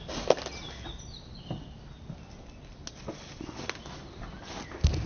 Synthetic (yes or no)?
no